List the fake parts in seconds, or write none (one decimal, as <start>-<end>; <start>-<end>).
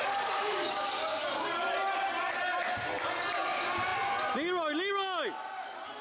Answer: none